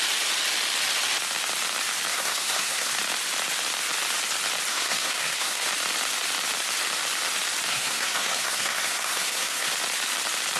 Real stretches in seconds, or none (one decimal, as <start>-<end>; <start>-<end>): 0.0-2.1; 2.9-4.7; 5.7-7.7; 9.7-10.6